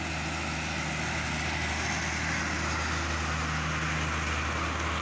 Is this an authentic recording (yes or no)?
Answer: yes